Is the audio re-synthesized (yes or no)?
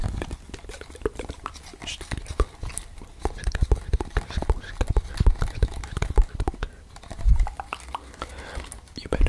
yes